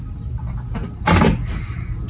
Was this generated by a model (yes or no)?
no